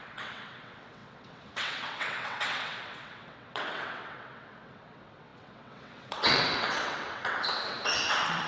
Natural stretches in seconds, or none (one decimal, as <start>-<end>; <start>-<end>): none